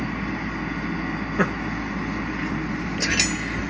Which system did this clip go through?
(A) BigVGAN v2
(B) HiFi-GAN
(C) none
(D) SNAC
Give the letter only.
C